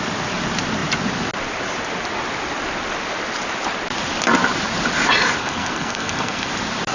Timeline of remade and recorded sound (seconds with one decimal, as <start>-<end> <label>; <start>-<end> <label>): 0.0-5.4 recorded; 5.4-6.5 remade; 6.5-6.9 recorded